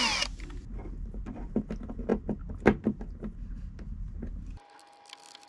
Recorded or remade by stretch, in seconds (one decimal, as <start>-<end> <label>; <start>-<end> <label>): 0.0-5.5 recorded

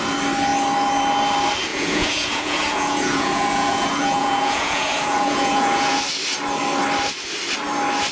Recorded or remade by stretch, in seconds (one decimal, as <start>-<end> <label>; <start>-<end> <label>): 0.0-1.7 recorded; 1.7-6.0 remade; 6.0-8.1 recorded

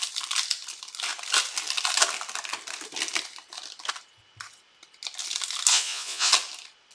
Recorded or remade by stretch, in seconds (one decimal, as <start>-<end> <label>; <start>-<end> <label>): 0.0-5.7 recorded; 5.7-6.3 remade; 6.3-6.9 recorded

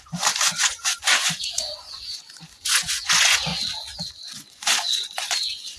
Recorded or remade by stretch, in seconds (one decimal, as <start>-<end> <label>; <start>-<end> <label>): 0.0-3.5 remade; 3.5-4.3 recorded; 4.3-5.8 remade